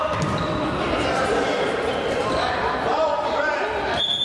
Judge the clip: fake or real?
fake